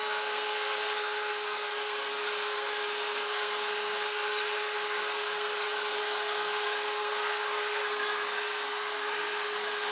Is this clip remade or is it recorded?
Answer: remade